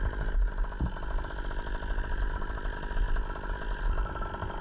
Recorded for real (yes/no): yes